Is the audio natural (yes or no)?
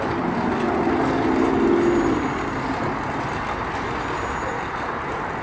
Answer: yes